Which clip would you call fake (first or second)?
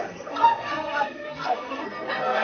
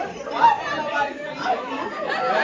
first